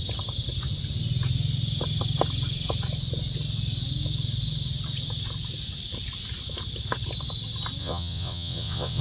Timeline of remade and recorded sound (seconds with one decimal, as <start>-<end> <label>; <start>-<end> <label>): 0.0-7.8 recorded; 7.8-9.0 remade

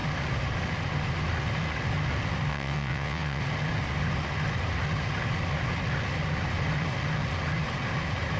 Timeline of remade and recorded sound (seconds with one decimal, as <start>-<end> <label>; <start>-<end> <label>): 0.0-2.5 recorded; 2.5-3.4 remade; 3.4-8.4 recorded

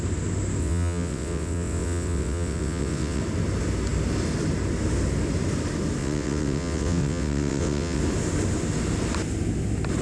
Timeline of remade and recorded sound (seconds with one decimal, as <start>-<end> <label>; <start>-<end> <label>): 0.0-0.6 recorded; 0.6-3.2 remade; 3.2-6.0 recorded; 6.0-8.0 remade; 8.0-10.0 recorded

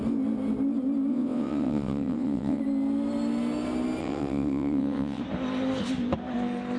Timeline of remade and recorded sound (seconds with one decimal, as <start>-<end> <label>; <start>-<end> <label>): 0.0-1.1 recorded; 1.1-2.6 remade; 2.6-4.0 recorded; 4.0-5.2 remade; 5.2-6.8 recorded

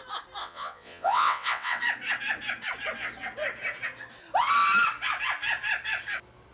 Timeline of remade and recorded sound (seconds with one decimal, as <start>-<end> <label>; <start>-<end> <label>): 0.0-0.4 recorded; 0.4-1.8 remade; 1.8-6.5 recorded

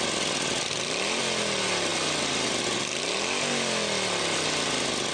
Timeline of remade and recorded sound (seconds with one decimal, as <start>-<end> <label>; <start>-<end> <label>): 0.0-5.1 recorded